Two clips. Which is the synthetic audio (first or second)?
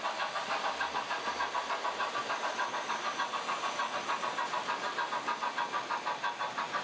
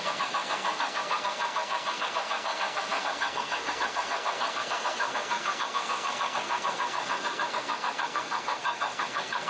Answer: second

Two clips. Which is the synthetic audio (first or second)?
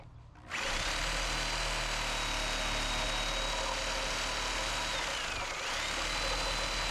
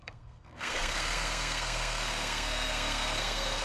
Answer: second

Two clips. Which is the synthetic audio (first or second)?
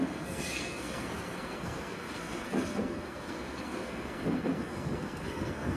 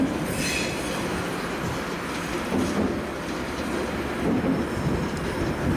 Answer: first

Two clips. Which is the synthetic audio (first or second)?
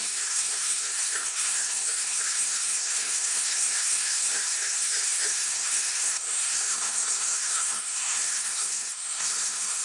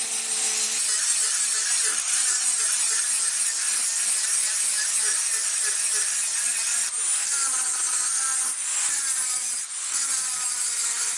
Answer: first